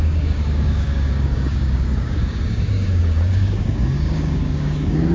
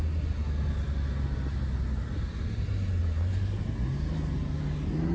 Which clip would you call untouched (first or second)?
second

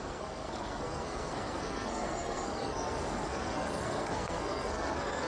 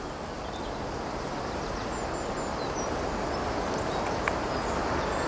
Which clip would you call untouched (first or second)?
second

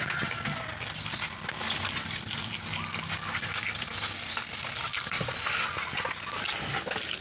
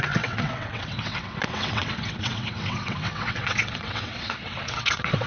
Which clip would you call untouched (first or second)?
first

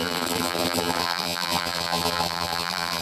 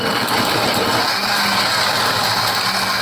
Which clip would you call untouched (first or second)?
second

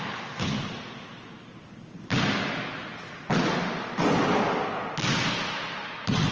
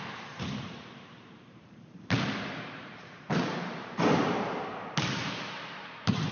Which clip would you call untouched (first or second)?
first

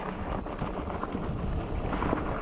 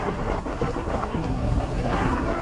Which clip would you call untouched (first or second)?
first